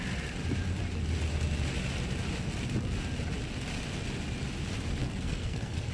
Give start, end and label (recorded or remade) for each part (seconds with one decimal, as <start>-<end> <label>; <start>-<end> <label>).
0.0-5.0 recorded; 5.0-5.9 remade